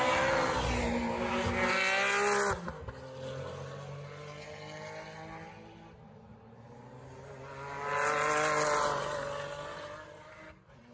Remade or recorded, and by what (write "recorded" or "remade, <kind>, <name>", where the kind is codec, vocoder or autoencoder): recorded